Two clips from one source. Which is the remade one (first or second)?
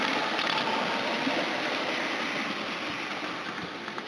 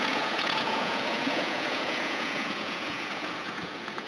second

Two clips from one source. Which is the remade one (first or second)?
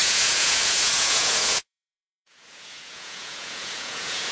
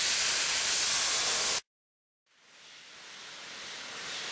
first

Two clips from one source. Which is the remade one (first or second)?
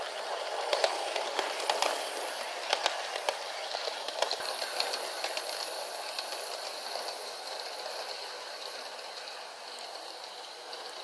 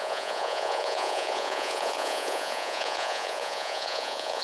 second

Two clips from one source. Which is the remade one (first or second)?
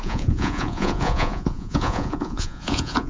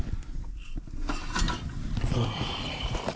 first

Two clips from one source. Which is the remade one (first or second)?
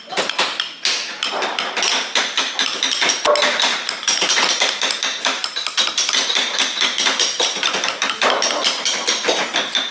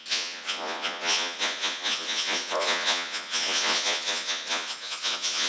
second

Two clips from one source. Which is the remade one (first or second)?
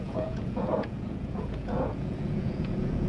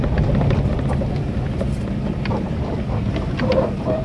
first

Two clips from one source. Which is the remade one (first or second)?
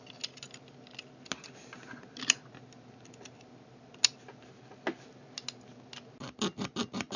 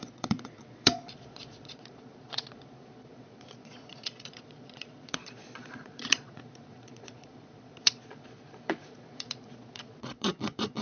second